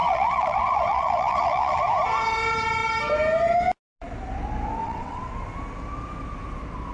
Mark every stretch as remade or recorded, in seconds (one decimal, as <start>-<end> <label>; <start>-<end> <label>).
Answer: 0.0-1.8 remade; 1.8-4.8 recorded; 4.8-5.3 remade; 5.3-6.9 recorded